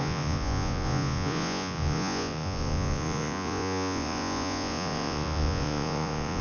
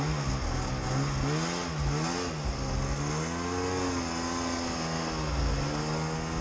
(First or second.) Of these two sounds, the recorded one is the second